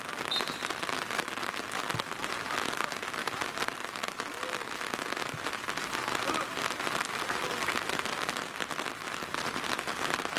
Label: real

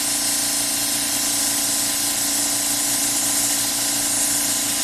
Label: real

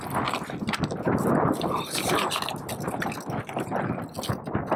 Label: real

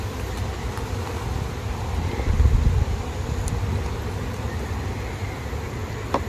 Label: real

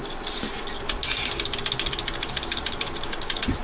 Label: real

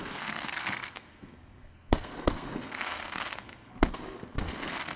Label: fake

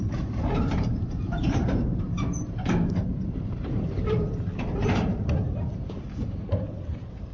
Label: fake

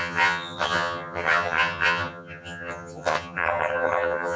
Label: fake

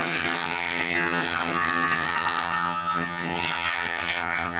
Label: fake